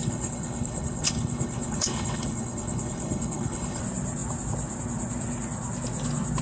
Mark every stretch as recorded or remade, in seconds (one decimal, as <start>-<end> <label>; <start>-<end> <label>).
0.0-3.8 remade; 3.8-6.4 recorded